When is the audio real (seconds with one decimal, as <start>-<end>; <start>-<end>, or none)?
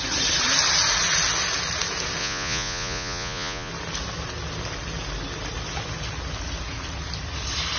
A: 0.0-2.2; 3.7-7.8